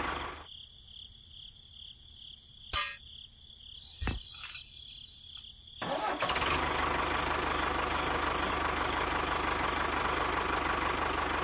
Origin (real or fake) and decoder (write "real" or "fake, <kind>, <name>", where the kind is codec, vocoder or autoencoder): real